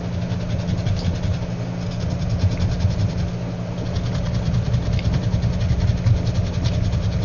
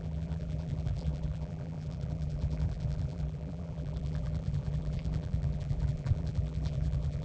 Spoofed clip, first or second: second